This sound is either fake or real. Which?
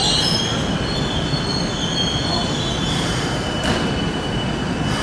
real